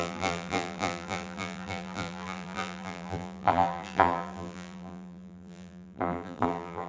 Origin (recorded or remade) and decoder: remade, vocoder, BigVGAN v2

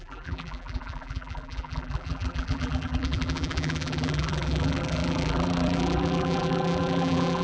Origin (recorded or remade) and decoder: remade, vocoder, BigVGAN v2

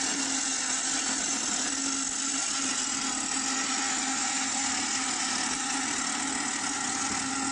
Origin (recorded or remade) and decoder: recorded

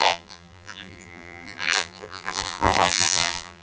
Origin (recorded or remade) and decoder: remade, vocoder, BigVGAN v2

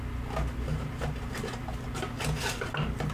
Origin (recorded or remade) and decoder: recorded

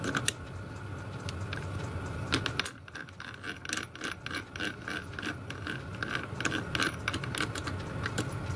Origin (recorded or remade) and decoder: recorded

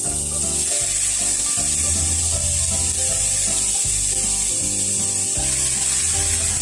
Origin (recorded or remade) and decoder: recorded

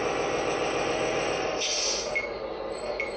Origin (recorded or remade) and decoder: remade, vocoder, BigVGAN v2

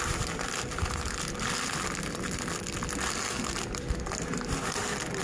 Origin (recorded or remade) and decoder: recorded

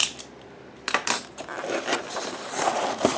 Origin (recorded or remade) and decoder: remade, vocoder, BigVGAN v2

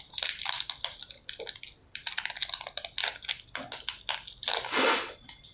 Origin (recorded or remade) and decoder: recorded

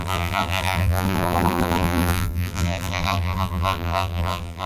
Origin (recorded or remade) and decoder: remade, vocoder, BigVGAN v2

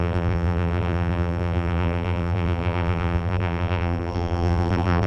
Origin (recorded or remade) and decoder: remade, vocoder, BigVGAN v2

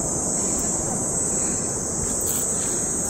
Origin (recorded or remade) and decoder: remade, vocoder, BigVGAN v2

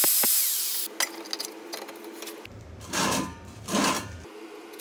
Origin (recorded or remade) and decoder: recorded